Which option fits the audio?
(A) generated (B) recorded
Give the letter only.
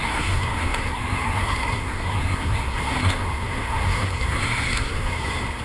A